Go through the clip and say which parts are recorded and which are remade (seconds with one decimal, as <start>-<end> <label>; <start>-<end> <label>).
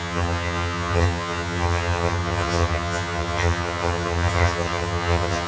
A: 0.0-5.5 remade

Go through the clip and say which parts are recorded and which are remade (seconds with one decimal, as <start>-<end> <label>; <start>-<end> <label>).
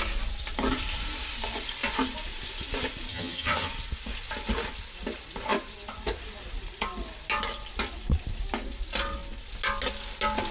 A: 0.0-3.1 recorded; 3.1-3.7 remade; 3.7-10.5 recorded